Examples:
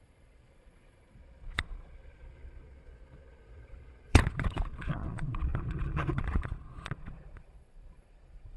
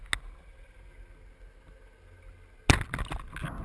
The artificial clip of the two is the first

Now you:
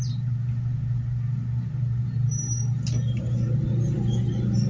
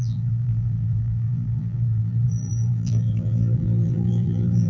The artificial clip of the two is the second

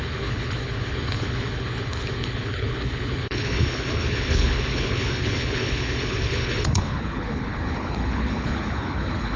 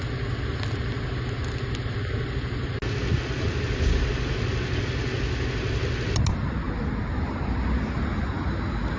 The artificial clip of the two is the first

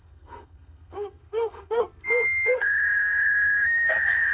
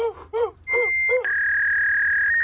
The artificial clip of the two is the first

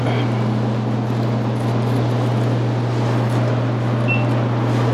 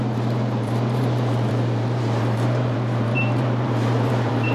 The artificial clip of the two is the second